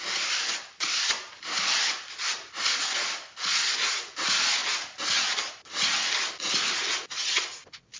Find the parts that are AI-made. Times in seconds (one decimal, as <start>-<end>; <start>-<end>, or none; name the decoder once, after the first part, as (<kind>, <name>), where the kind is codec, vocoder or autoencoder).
none